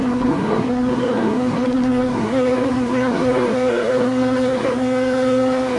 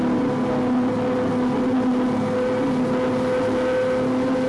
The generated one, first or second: first